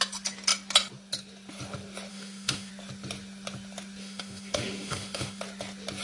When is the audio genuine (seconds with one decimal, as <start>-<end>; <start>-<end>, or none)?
0.0-2.1; 2.7-4.0; 5.4-6.0